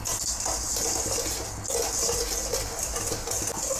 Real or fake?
real